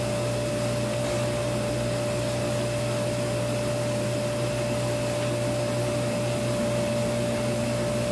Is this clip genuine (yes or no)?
yes